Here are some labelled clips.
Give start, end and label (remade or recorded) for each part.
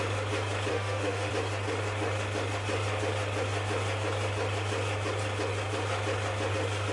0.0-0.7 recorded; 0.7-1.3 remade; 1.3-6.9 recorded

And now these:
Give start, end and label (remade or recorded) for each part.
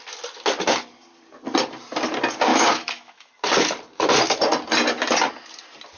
0.0-2.5 recorded; 2.5-3.3 remade; 3.3-6.0 recorded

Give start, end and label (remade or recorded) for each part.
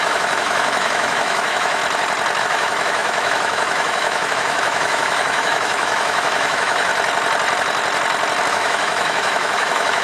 0.0-1.8 remade; 1.8-2.4 recorded; 2.4-6.9 remade; 6.9-8.5 recorded; 8.5-10.0 remade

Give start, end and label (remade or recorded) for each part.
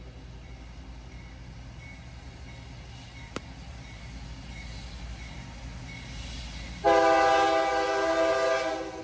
0.0-9.0 recorded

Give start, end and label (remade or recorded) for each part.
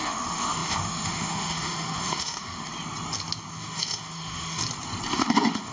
0.0-2.7 remade; 2.7-3.5 recorded; 3.5-4.6 remade; 4.6-5.1 recorded; 5.1-5.7 remade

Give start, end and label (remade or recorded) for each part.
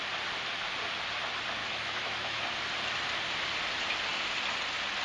0.0-1.6 recorded; 1.6-2.4 remade; 2.4-5.0 recorded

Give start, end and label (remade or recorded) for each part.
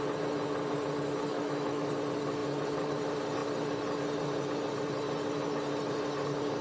0.0-1.3 recorded; 1.3-1.9 remade; 1.9-6.6 recorded